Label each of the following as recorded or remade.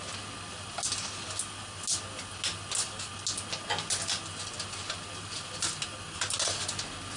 recorded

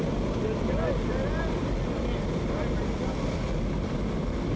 recorded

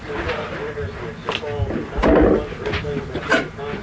recorded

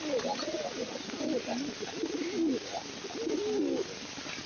recorded